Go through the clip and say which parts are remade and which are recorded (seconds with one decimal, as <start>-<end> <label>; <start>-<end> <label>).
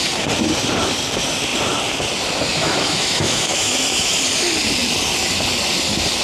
0.0-2.5 recorded; 2.5-4.1 remade; 4.1-6.2 recorded